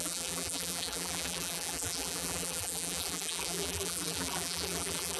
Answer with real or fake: fake